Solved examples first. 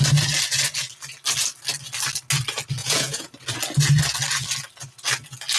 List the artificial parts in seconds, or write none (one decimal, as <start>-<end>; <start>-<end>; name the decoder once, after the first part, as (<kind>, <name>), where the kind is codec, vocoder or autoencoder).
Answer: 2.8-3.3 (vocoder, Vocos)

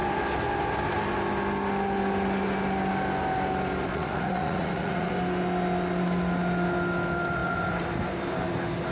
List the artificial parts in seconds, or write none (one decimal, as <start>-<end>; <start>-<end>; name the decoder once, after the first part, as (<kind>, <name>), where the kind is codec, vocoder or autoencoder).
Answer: 3.9-5.1 (vocoder, Vocos)

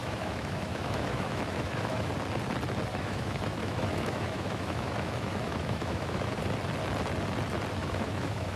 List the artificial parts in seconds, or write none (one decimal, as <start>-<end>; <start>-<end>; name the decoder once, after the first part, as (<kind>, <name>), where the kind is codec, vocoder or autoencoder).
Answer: 0.0-2.1 (autoencoder, DAC-VAE); 2.9-6.4; 7.8-8.6

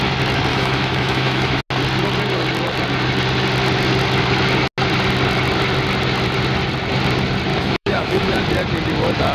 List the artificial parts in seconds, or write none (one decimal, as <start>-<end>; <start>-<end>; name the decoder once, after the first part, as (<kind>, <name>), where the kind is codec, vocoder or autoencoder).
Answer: 0.5-1.6 (autoencoder, DAC-VAE); 7.5-8.4

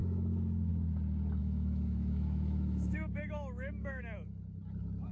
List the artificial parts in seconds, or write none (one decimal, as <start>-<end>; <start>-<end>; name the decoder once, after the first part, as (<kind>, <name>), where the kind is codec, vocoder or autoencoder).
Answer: 0.0-0.7 (autoencoder, DAC-VAE); 1.4-4.0

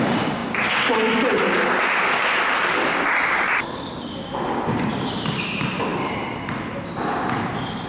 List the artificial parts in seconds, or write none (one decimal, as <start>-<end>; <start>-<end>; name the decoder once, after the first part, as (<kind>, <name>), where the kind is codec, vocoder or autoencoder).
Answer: none